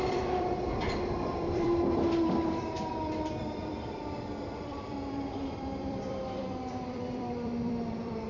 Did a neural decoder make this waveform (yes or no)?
yes